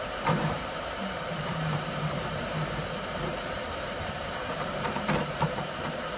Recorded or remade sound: remade